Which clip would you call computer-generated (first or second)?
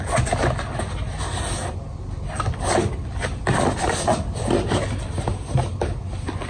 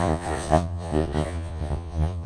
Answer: second